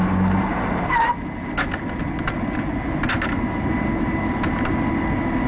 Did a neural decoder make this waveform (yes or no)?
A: no